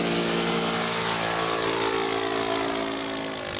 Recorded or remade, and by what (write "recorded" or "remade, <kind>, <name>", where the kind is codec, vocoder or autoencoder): recorded